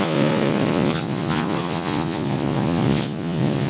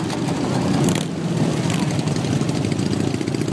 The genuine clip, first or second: second